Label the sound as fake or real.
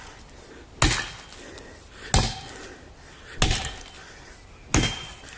real